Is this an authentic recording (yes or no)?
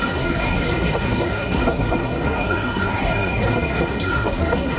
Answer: no